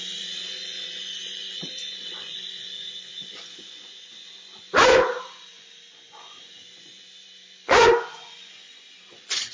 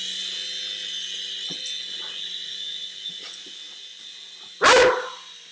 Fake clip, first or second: first